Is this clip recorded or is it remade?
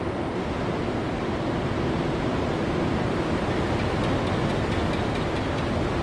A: recorded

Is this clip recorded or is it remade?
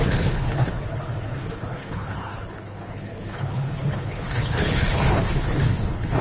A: remade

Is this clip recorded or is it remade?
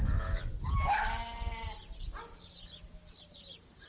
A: recorded